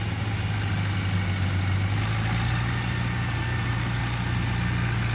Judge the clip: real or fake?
real